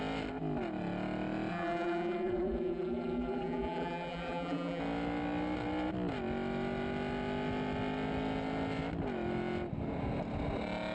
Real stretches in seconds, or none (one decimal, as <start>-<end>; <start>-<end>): 0.0-1.5; 4.8-10.9